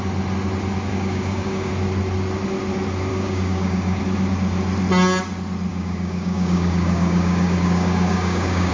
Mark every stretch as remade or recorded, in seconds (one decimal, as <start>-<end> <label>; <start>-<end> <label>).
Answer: 0.0-0.9 recorded; 0.9-1.7 remade; 1.7-3.1 recorded; 3.1-4.0 remade; 4.0-5.7 recorded; 5.7-8.7 remade